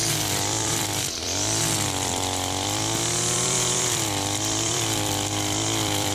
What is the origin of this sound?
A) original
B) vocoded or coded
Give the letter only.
B